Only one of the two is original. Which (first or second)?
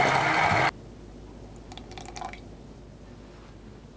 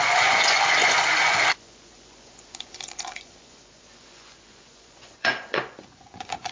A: first